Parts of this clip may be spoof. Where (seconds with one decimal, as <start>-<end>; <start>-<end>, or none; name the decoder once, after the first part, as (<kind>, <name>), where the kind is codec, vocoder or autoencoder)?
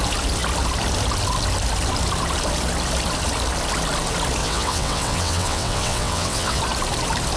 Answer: 4.4-6.6 (vocoder, WaveNeXt)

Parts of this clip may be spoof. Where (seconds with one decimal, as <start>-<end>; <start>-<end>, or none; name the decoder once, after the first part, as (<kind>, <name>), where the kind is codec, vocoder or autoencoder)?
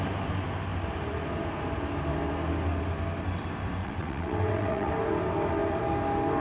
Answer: 3.8-4.9 (vocoder, WaveNeXt)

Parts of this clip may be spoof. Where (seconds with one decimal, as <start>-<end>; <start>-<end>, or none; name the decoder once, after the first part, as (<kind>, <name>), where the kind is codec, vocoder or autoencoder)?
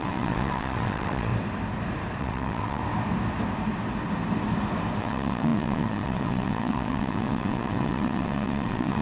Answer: 0.0-1.3 (vocoder, WaveNeXt); 2.2-2.8; 5.0-9.0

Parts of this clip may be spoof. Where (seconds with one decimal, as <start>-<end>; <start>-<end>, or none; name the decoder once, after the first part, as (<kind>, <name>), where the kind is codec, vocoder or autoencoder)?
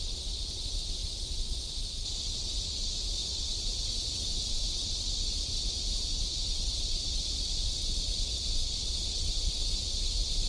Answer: 0.0-10.5 (vocoder, WaveNeXt)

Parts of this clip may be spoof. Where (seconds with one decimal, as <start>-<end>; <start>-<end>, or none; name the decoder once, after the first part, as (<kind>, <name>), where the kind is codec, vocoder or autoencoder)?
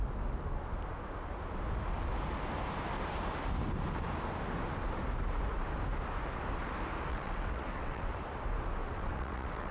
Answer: 7.1-8.1 (vocoder, WaveNeXt); 8.8-9.7